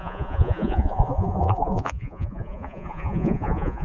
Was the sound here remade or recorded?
remade